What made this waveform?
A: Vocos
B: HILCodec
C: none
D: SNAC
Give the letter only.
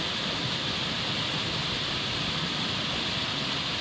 C